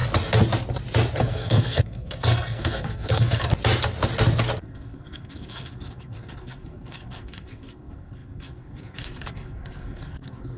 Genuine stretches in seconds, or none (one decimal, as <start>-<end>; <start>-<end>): 0.0-1.2; 3.5-4.6